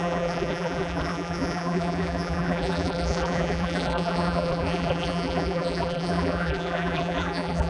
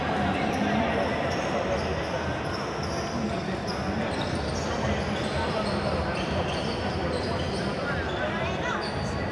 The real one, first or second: second